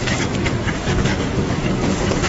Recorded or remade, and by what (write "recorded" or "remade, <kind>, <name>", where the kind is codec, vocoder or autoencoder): remade, codec, DAC